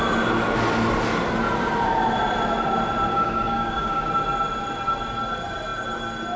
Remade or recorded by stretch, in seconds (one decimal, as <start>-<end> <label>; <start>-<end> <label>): 0.0-3.1 recorded; 3.1-4.1 remade; 4.1-6.4 recorded